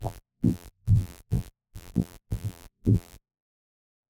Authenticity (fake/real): fake